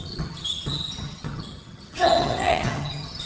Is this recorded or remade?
remade